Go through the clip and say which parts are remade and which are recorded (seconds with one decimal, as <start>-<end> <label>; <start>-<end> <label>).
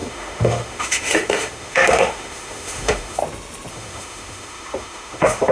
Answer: 0.0-3.2 remade; 3.2-3.7 recorded; 3.7-5.5 remade